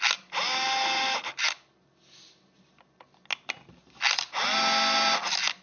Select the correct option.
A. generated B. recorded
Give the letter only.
B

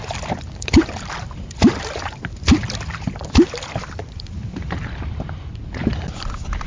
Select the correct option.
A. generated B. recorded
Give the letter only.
A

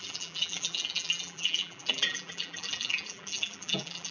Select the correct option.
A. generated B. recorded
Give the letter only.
A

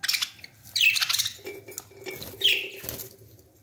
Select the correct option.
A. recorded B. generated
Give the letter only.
A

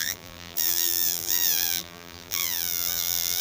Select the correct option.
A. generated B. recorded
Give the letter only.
A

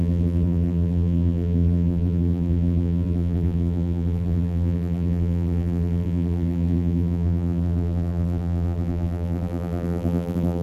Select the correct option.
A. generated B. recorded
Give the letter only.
A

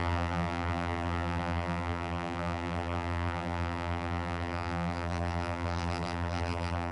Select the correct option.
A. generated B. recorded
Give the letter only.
A